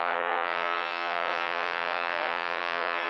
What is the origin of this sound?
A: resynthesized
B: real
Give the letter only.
A